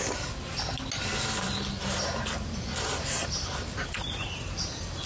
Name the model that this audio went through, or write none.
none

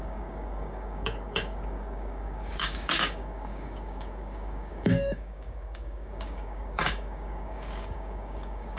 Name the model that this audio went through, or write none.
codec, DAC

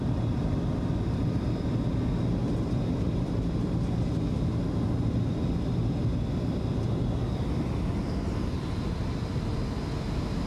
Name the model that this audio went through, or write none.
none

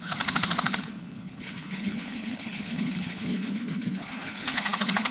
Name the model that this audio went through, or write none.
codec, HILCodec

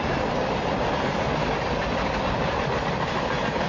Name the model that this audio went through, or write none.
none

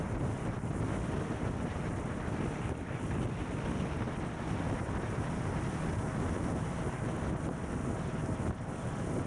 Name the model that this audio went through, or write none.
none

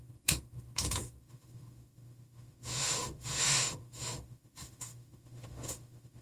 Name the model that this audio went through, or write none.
autoencoder, DAC-VAE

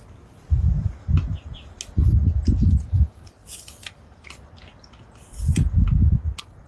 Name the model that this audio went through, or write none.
none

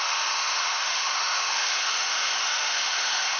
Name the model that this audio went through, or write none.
autoencoder, DAC-VAE